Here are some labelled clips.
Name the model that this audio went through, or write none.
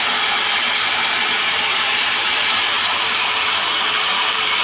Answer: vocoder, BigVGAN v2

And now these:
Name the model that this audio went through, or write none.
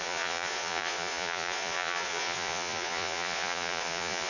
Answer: vocoder, Vocos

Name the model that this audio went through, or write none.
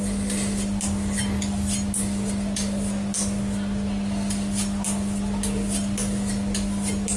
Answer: none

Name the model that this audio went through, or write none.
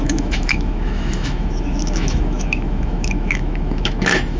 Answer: autoencoder, DAC-VAE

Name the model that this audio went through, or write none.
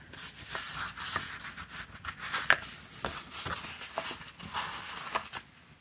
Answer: none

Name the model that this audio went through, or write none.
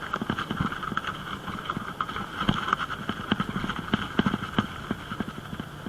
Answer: none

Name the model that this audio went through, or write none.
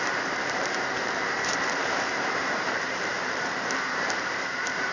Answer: vocoder, BigVGAN v2